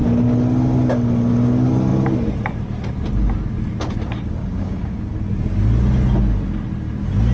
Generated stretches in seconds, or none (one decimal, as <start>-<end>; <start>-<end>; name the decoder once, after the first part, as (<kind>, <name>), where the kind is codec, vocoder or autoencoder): 4.4-5.0 (codec, DAC)